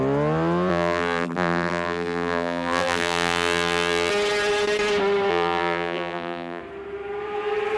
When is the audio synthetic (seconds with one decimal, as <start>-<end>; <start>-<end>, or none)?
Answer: 0.7-4.1; 5.3-6.6